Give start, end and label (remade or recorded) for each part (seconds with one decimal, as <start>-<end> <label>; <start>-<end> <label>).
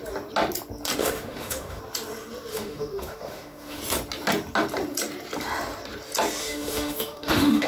0.0-1.0 recorded; 1.0-1.8 remade; 1.8-2.5 recorded; 2.5-3.8 remade; 3.8-6.4 recorded; 6.4-7.7 remade